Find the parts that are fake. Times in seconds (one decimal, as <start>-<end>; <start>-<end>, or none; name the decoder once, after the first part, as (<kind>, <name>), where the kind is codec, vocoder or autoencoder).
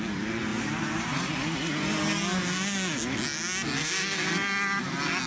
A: 0.5-1.3 (vocoder, BigVGAN v2)